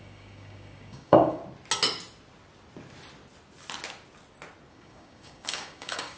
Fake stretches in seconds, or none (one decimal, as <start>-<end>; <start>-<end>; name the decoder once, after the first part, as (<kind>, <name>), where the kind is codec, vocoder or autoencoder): 0.0-1.4 (codec, DAC); 4.7-6.2